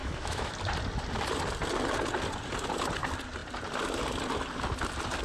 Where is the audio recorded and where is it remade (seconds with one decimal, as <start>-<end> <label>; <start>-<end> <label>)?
0.0-0.5 remade; 0.5-5.2 recorded